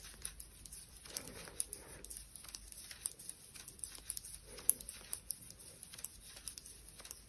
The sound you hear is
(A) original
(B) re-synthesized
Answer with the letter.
A